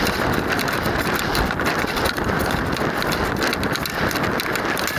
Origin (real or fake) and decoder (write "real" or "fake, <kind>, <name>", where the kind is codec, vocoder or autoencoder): real